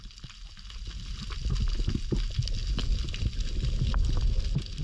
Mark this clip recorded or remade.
recorded